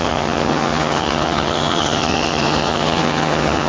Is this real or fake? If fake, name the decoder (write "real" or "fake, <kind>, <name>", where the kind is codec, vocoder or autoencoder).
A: fake, vocoder, HiFi-GAN